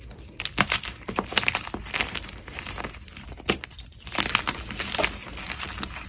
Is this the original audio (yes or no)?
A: yes